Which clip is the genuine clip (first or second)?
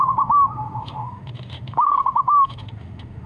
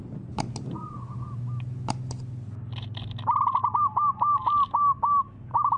second